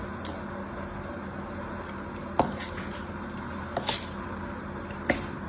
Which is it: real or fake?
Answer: real